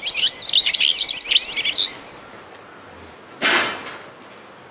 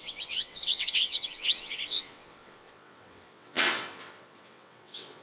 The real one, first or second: first